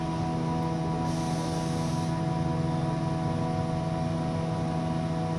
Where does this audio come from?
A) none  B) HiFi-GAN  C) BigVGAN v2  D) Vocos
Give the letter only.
A